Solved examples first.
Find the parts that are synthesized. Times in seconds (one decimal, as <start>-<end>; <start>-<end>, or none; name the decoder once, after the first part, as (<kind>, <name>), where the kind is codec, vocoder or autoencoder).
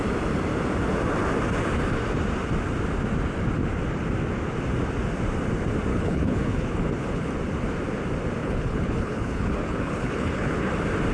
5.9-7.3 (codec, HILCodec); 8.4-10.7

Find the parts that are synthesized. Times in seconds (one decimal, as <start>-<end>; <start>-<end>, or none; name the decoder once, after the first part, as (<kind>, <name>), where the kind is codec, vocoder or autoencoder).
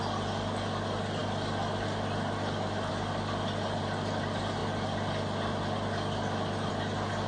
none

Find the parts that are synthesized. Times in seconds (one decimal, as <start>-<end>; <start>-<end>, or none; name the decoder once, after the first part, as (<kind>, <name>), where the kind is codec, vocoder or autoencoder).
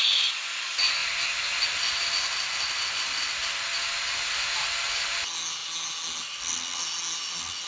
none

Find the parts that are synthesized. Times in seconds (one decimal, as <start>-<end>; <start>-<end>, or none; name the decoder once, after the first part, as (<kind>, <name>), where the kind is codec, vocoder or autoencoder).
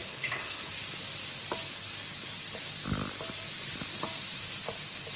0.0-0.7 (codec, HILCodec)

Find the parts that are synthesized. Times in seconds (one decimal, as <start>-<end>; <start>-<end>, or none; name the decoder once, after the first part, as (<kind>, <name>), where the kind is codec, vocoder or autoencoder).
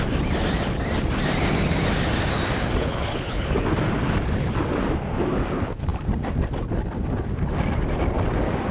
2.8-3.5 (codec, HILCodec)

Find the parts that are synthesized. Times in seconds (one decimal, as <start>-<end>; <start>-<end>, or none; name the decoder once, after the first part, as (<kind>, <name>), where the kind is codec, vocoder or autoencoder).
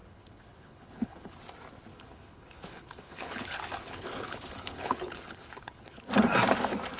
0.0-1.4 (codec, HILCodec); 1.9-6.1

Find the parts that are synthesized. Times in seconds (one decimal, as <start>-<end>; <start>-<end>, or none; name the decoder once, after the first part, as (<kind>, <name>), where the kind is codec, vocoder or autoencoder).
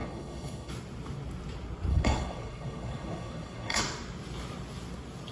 0.0-0.7 (codec, HILCodec); 1.9-3.8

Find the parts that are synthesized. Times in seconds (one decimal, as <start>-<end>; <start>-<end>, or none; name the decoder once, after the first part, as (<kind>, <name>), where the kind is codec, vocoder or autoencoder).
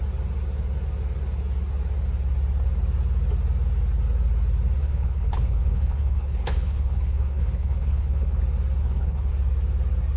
4.8-8.4 (codec, HILCodec); 8.8-9.3